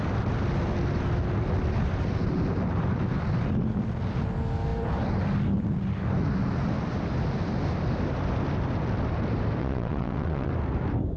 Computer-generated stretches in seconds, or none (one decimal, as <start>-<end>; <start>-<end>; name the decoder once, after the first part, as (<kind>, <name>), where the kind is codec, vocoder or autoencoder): 9.6-10.5 (vocoder, WaveNeXt)